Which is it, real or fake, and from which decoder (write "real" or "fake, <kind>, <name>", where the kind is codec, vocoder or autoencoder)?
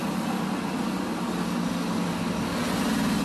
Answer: real